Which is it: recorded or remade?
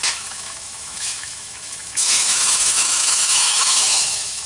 remade